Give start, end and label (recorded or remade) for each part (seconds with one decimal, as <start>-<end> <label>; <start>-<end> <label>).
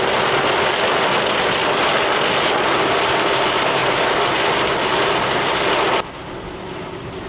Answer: 0.0-7.3 recorded